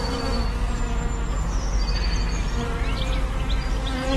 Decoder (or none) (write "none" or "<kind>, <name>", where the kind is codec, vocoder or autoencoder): none